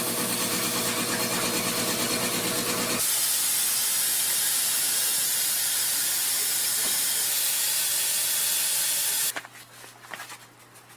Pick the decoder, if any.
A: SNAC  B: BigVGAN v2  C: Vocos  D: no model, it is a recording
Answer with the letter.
D